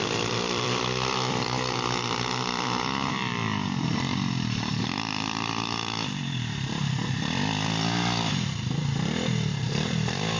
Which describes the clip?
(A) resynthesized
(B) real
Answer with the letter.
A